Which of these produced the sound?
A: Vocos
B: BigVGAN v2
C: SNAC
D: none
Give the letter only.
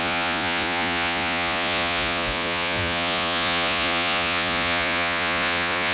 A